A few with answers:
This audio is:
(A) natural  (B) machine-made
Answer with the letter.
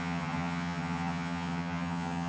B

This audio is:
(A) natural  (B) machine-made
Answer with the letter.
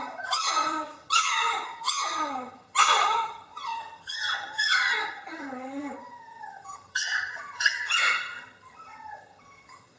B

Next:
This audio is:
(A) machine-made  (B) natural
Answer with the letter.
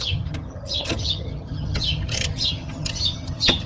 A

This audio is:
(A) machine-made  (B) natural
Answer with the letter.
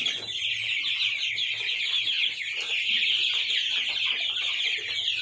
B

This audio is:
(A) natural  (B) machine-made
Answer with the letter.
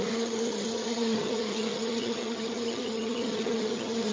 B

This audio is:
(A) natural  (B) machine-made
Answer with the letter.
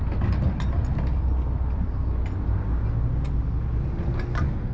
A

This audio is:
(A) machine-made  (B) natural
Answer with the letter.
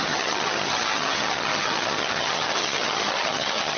A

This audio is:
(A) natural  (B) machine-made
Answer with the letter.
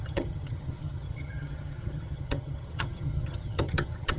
B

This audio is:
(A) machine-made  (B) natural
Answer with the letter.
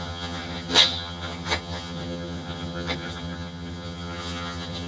A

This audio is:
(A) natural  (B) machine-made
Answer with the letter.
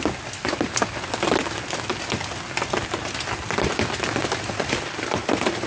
A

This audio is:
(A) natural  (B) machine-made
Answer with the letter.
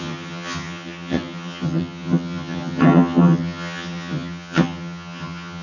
B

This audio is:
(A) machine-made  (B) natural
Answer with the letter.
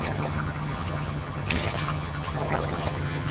A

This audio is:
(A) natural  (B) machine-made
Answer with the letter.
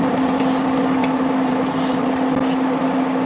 A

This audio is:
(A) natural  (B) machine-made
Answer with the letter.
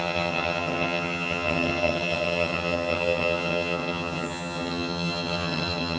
B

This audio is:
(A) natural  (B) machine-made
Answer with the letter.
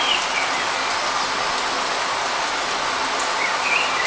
A